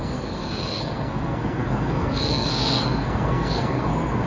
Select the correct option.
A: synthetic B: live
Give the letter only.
A